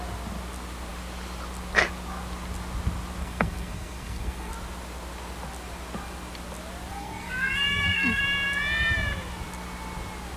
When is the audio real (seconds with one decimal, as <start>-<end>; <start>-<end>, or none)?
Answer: 0.0-3.2; 4.5-6.9; 8.2-10.4